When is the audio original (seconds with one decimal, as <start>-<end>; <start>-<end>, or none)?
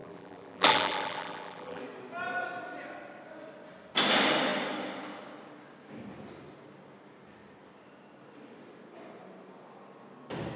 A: 1.8-10.6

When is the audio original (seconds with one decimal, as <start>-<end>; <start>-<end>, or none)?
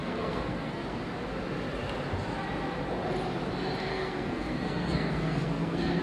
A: 1.0-3.9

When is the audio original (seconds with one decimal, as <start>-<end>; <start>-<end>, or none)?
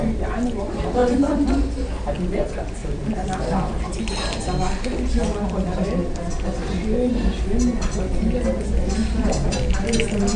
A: 0.0-10.4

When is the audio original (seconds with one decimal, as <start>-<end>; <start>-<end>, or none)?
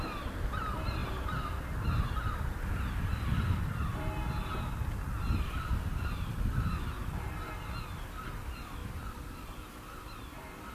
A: 0.0-1.0; 2.6-3.8; 4.4-8.8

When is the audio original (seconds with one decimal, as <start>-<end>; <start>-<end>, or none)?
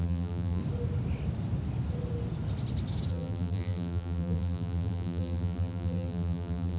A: 0.6-3.1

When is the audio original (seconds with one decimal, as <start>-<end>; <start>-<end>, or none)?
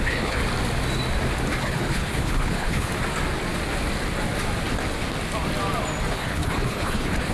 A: 0.4-1.6; 2.9-6.1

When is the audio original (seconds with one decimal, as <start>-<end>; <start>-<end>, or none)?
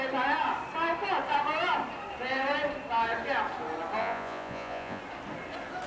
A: 0.0-4.0; 5.0-5.9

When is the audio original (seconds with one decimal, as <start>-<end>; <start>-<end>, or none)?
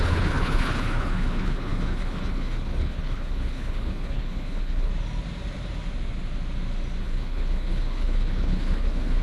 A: 4.9-7.0